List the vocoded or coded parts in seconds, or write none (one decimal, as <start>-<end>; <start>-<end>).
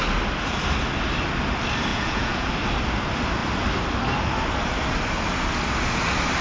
1.9-2.5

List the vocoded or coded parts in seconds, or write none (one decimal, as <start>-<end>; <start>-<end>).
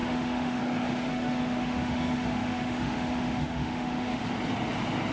0.0-0.6; 1.1-4.2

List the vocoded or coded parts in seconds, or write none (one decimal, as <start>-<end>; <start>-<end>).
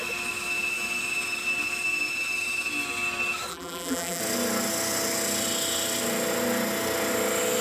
3.5-4.2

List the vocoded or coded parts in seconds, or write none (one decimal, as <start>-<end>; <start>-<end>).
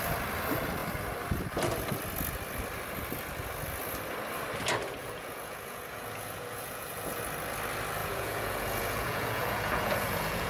5.0-7.2; 8.0-10.5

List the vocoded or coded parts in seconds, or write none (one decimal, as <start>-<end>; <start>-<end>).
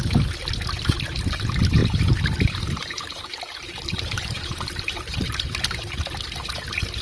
1.8-6.0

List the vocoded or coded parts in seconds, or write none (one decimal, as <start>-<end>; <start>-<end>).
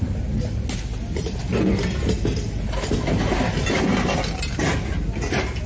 none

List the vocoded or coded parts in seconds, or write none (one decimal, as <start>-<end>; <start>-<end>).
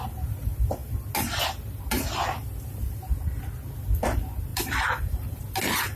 4.5-5.4